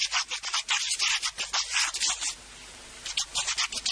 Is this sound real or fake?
real